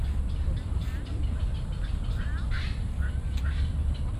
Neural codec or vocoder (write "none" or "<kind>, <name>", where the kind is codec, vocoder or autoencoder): vocoder, BigVGAN v2